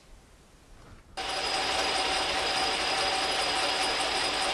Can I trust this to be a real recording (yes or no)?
yes